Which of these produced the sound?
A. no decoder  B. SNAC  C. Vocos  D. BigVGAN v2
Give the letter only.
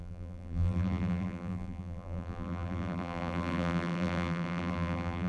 D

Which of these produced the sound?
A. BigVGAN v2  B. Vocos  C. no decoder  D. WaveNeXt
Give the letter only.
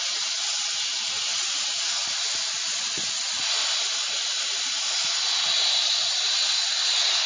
C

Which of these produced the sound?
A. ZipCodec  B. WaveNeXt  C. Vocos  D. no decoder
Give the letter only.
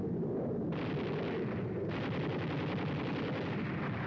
D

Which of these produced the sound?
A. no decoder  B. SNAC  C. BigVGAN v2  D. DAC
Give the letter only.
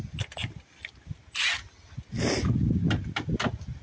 A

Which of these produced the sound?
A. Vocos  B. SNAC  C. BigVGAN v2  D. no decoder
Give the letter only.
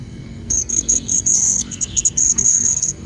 B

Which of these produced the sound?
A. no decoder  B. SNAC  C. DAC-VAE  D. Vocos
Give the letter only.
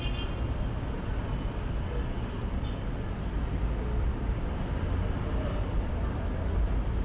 A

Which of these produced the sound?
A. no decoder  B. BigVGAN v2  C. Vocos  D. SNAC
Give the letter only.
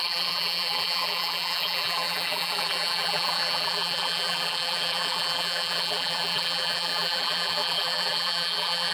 B